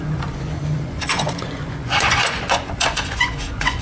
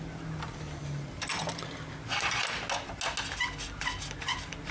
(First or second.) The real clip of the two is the second